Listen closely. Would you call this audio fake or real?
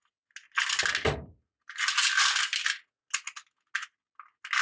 real